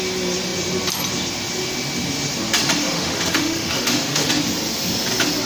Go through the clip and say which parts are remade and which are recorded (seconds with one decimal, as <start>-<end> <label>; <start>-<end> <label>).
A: 0.0-2.8 recorded; 2.8-4.3 remade; 4.3-5.5 recorded